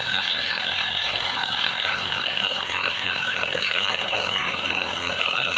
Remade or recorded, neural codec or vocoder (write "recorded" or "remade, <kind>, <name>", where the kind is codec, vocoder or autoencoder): remade, codec, SNAC